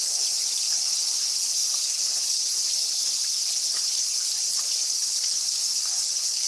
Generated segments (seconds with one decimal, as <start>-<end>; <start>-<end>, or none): 0.0-6.5